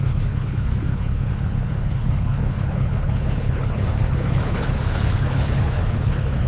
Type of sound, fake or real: fake